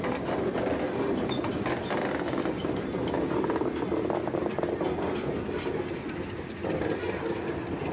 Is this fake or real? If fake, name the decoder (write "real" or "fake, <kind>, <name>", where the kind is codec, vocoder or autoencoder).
real